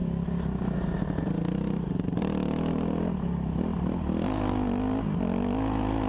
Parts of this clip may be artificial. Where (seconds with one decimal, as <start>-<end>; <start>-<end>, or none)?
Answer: none